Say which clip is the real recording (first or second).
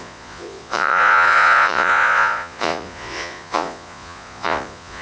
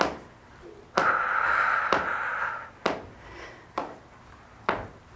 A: second